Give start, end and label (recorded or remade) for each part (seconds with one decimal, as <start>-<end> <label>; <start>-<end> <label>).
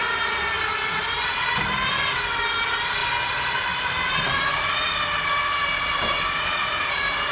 0.0-7.3 recorded